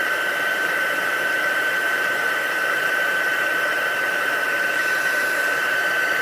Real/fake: fake